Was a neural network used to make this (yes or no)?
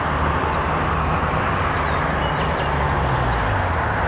no